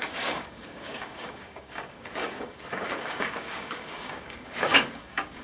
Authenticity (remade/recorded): remade